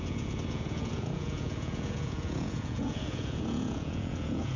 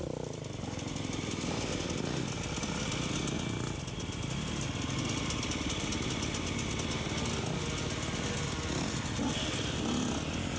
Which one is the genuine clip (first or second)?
second